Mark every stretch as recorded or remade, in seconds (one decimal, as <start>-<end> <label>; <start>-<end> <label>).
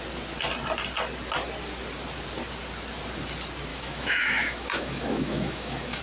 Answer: 0.0-3.7 recorded; 3.7-6.0 remade